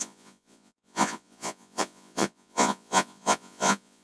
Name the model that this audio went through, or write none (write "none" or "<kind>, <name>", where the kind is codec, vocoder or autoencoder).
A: vocoder, Vocos